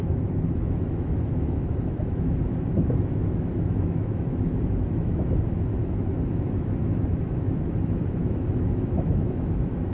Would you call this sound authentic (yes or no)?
no